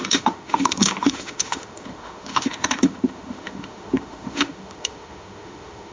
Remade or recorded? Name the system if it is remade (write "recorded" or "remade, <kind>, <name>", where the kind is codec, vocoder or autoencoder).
remade, autoencoder, DAC-VAE